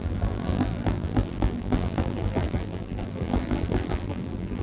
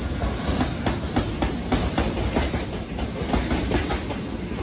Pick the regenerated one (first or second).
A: first